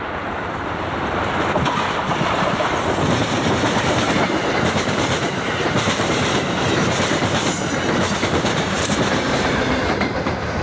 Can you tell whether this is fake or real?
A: fake